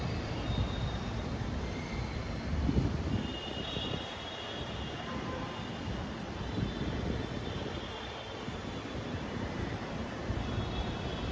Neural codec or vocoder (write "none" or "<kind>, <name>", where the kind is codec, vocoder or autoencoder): vocoder, BigVGAN v2